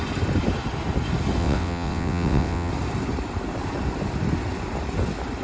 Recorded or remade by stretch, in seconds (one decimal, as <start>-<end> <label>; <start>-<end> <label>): 0.0-1.4 recorded; 1.4-2.7 remade; 2.7-5.4 recorded